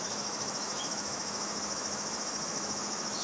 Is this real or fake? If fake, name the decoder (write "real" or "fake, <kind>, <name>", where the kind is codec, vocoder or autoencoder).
fake, autoencoder, DAC-VAE